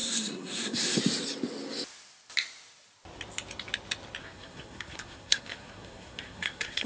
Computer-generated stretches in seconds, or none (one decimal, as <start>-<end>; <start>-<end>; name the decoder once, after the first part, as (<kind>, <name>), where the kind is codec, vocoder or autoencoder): 0.0-1.0 (codec, SNAC); 4.2-6.9